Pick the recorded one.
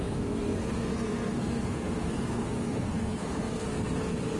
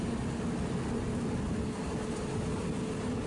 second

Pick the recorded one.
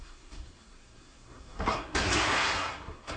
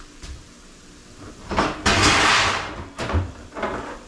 second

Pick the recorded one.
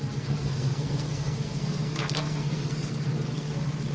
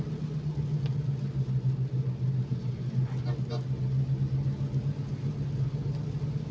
second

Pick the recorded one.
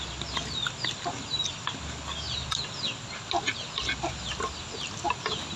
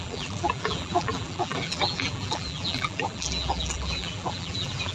first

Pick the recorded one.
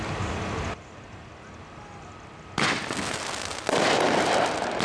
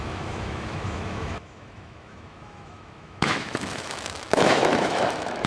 first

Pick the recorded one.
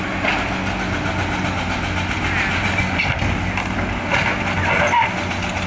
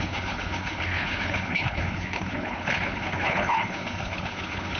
first